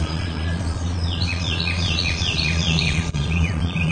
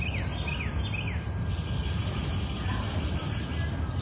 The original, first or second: second